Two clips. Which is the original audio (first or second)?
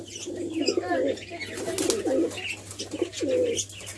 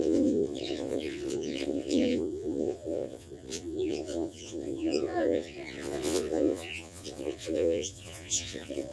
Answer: first